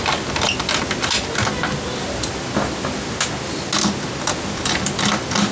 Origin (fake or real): real